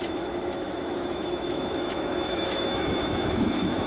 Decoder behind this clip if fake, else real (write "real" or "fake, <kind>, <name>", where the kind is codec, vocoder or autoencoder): fake, autoencoder, DAC-VAE